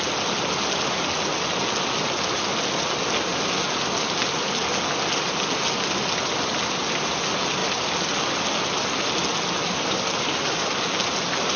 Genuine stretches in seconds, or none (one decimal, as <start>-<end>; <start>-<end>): 0.0-11.6